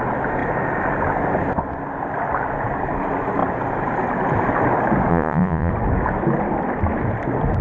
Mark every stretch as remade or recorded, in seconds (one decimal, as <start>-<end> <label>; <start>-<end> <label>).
0.0-5.1 recorded; 5.1-5.7 remade; 5.7-7.6 recorded